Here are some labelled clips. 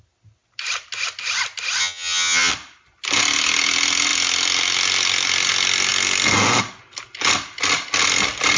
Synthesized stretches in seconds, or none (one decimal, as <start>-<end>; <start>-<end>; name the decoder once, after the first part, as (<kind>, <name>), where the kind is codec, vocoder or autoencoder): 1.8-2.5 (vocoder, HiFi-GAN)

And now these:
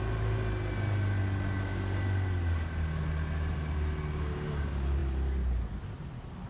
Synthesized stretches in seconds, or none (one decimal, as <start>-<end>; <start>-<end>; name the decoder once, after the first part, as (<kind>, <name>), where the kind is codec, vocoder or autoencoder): none

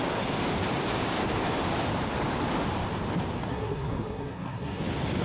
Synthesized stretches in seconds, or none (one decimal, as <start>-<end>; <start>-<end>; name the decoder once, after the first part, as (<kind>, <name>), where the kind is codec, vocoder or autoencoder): 3.5-4.8 (codec, SNAC)

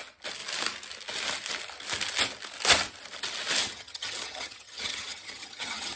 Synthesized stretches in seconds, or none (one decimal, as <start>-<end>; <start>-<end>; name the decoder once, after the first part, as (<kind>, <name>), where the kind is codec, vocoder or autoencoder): 3.6-6.0 (vocoder, HiFi-GAN)

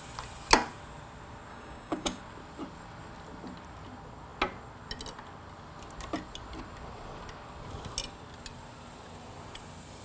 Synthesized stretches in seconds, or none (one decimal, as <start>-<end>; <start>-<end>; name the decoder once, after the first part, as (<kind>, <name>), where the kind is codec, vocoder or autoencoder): 1.5-2.2 (codec, DAC)

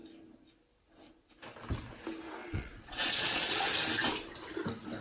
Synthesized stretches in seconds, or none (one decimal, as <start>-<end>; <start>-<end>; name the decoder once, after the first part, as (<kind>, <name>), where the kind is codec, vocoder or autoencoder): 2.4-3.7 (vocoder, Vocos)